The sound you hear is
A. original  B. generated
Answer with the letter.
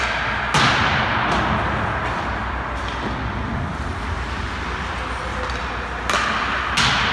A